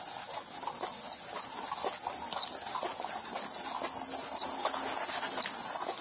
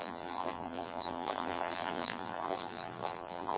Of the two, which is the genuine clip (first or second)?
first